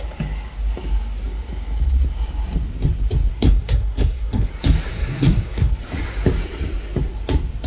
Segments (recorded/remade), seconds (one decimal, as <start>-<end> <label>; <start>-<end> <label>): 0.0-3.3 recorded; 3.3-4.5 remade; 4.5-4.9 recorded; 4.9-5.7 remade; 5.7-7.7 recorded